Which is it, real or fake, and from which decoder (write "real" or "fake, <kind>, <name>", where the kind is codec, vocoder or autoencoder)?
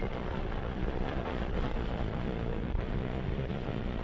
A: fake, vocoder, Vocos